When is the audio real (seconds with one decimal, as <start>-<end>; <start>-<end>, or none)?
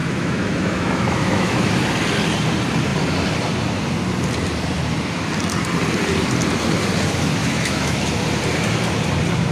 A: 1.7-7.4; 8.0-9.5